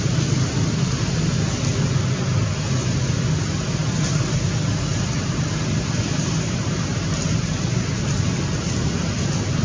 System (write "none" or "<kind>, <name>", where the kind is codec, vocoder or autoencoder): none